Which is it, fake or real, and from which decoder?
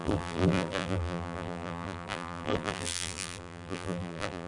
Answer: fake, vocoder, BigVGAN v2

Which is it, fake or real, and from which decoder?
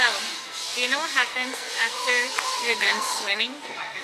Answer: fake, codec, SNAC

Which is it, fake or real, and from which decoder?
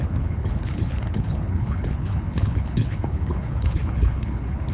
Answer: fake, codec, HILCodec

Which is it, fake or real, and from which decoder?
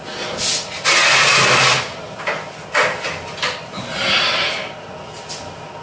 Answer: real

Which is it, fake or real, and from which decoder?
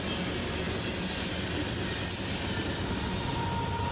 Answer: real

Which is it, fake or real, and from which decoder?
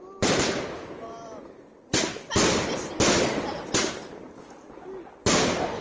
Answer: real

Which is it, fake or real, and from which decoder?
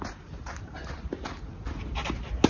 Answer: real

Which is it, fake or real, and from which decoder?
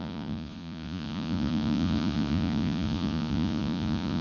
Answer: fake, vocoder, Vocos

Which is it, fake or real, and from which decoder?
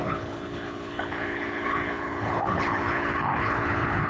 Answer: fake, codec, HILCodec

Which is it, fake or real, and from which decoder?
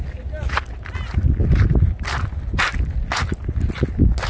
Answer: real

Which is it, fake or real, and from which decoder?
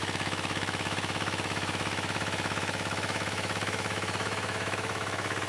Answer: fake, autoencoder, DAC-VAE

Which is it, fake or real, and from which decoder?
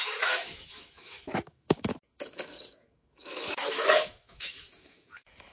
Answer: fake, autoencoder, DAC-VAE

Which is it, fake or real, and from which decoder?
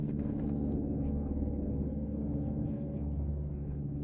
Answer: fake, codec, SNAC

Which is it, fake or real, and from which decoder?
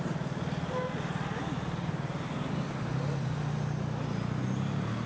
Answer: real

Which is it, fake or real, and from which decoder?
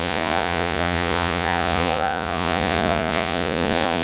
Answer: fake, vocoder, Vocos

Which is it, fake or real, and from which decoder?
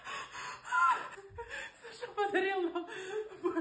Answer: real